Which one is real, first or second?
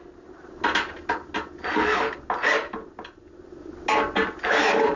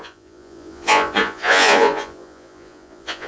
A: first